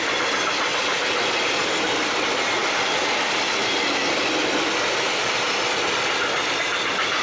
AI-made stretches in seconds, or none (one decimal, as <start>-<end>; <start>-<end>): none